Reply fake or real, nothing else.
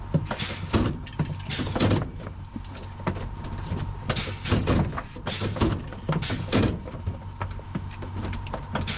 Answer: real